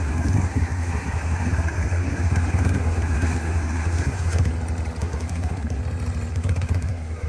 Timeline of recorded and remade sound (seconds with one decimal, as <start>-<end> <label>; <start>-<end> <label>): 0.0-4.5 remade; 4.5-5.0 recorded; 5.0-5.8 remade; 5.8-6.3 recorded; 6.3-7.3 remade